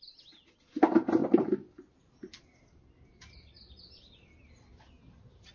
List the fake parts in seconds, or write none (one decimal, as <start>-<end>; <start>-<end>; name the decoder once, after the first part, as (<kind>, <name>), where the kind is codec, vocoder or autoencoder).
none